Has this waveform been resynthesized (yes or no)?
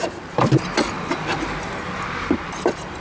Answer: no